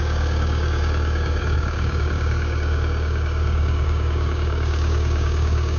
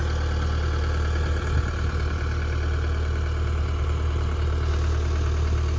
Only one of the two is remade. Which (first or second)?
first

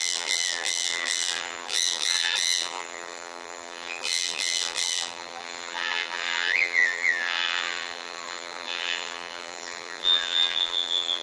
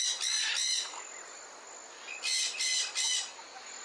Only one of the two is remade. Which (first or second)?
first